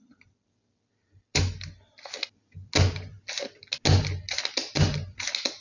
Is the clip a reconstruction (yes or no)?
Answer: no